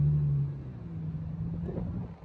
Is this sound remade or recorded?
recorded